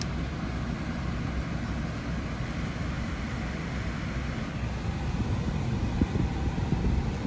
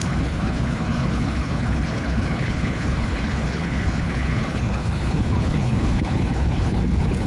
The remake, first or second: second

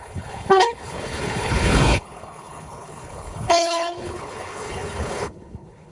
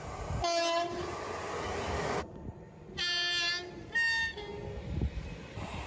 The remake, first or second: first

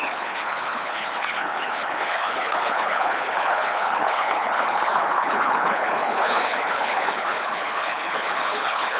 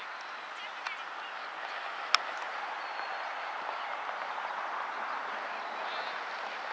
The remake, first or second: first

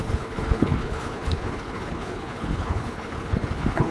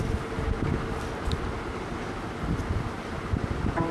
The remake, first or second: first